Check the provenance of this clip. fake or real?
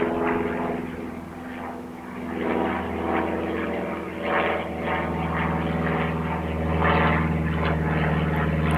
real